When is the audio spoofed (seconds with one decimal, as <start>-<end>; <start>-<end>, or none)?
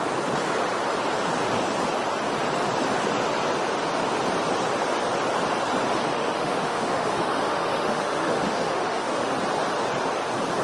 6.1-9.3